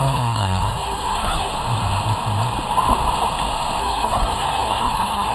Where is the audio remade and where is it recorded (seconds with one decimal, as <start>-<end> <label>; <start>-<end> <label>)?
0.0-1.5 remade; 1.5-3.8 recorded; 3.8-5.3 remade